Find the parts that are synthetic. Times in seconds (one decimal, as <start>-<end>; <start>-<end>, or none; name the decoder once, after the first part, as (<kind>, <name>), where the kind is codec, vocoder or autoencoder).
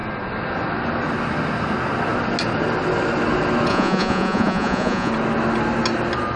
3.7-5.1 (vocoder, Vocos)